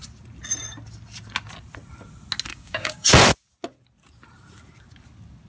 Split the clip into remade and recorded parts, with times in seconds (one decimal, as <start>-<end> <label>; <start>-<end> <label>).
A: 0.0-2.5 recorded; 2.5-3.1 remade; 3.1-5.5 recorded

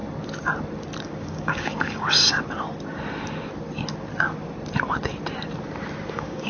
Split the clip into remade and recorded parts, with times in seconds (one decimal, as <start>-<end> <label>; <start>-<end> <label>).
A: 0.0-1.0 recorded; 1.0-2.2 remade; 2.2-6.1 recorded; 6.1-6.5 remade